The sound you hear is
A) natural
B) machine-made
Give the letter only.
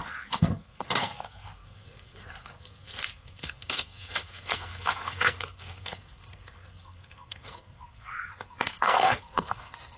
B